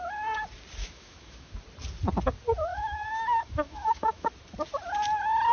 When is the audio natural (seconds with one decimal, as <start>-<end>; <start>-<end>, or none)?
0.0-0.8; 1.5-2.7; 4.3-5.5